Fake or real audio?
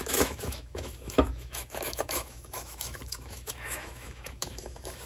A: fake